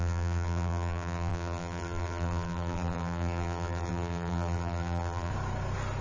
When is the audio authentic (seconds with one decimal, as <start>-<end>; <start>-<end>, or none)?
5.3-6.0